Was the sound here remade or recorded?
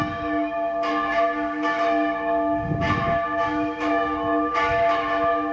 remade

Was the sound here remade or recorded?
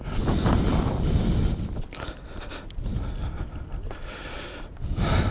recorded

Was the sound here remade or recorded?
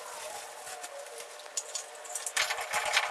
recorded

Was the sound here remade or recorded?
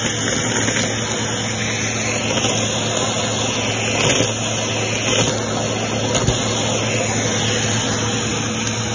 recorded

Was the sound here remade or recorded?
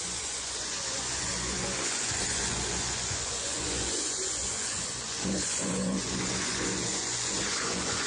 remade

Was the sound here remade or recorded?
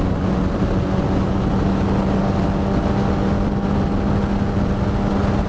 recorded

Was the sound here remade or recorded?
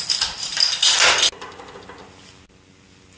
recorded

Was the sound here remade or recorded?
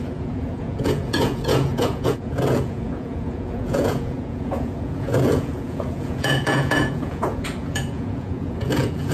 remade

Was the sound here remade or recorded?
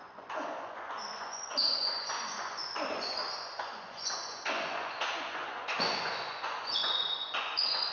remade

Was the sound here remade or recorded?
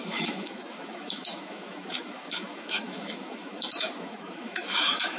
remade